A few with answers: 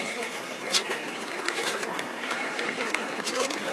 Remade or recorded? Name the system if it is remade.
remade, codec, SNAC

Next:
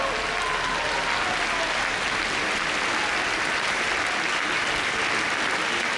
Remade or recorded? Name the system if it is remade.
recorded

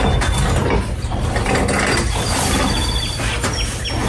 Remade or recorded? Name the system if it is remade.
recorded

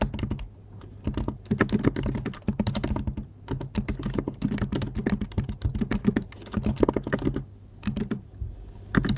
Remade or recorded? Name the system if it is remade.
recorded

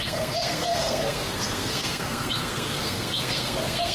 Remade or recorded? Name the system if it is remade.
remade, codec, SNAC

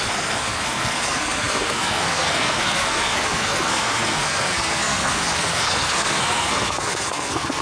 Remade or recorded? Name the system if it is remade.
remade, codec, SNAC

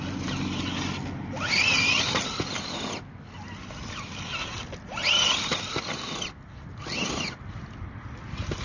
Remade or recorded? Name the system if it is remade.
recorded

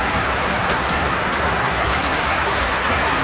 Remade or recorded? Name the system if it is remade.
remade, codec, SNAC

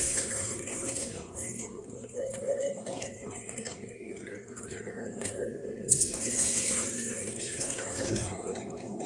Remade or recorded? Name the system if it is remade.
remade, codec, SNAC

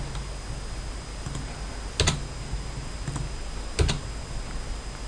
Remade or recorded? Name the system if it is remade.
recorded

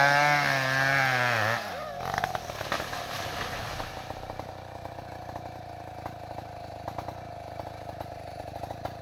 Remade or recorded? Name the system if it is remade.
recorded